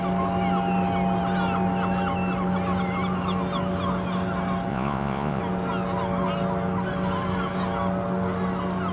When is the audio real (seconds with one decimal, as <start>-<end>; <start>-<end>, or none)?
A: 0.0-4.7; 5.4-8.9

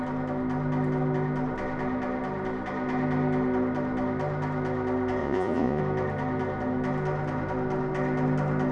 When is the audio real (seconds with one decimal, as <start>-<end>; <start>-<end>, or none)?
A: 0.0-5.2; 5.8-8.7

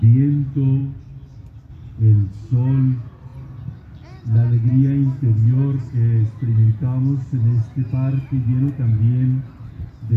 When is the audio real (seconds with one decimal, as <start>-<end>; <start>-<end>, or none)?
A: 0.0-10.2

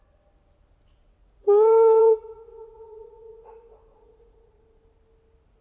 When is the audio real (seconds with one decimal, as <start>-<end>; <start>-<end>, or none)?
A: 0.0-1.2; 4.5-5.6

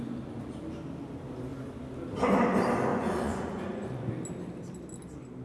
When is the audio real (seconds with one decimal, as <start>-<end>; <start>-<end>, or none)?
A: 0.0-2.9; 4.1-5.4

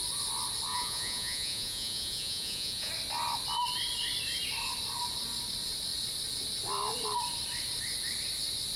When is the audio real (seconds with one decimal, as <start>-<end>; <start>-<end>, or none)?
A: 0.0-0.7; 2.9-8.8